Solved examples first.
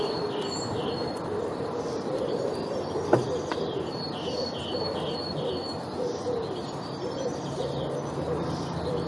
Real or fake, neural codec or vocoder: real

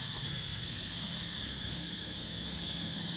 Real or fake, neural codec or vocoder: fake, codec, SNAC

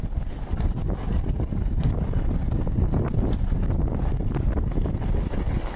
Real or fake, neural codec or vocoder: real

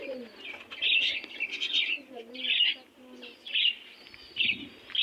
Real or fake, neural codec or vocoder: real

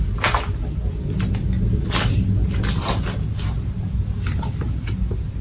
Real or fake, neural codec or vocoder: real